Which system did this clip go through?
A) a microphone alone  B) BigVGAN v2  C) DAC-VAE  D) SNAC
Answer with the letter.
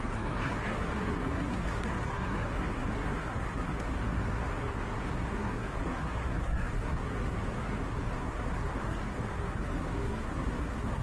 D